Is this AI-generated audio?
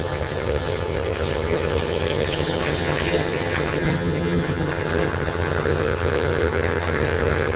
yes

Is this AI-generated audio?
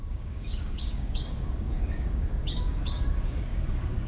yes